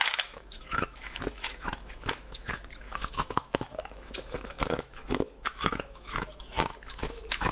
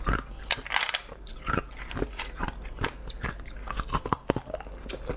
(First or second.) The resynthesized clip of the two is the first